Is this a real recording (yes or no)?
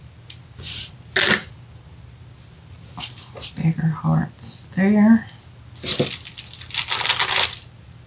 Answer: yes